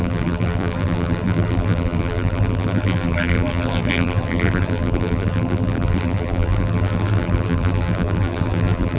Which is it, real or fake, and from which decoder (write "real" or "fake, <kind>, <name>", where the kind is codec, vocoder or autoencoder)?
fake, vocoder, BigVGAN v2